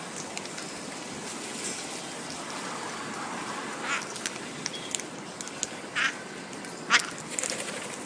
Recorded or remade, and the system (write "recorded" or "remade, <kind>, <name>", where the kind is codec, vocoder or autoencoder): recorded